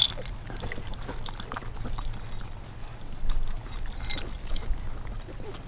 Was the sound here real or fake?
real